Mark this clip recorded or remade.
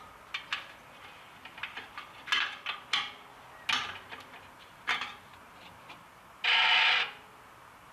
recorded